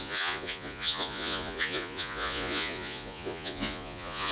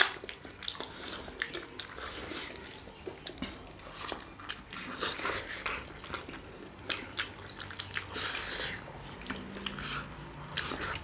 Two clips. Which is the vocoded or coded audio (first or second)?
first